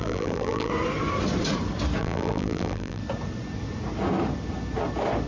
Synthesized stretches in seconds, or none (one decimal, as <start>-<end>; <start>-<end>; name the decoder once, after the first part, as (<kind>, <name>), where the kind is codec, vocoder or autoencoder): 0.0-0.7 (vocoder, BigVGAN v2); 2.0-3.0